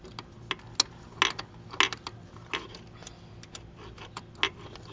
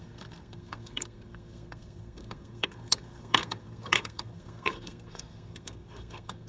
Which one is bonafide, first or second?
first